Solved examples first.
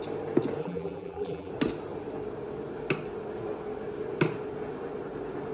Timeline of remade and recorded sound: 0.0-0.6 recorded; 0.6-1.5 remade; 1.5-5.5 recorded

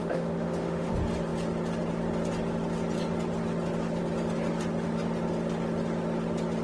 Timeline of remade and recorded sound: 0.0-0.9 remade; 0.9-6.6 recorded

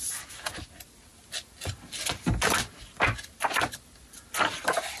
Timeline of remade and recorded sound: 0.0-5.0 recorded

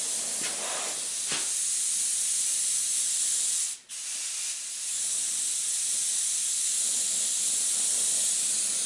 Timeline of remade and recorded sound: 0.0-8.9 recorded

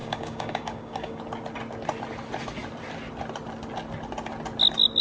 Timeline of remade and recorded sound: 0.0-1.2 remade; 1.2-5.0 recorded

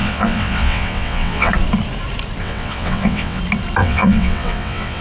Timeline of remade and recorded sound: 0.0-1.5 remade; 1.5-2.4 recorded; 2.4-3.4 remade; 3.4-3.8 recorded; 3.8-5.0 remade

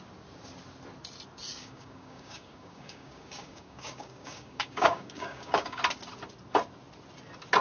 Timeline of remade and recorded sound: 0.0-1.5 recorded; 1.5-5.8 remade; 5.8-7.6 recorded